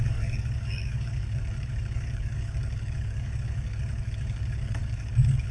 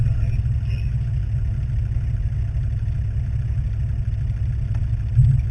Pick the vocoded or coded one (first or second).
first